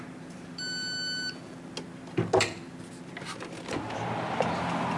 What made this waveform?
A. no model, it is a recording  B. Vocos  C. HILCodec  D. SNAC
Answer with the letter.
A